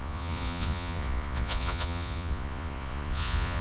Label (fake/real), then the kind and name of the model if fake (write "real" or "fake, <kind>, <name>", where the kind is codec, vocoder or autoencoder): fake, vocoder, Vocos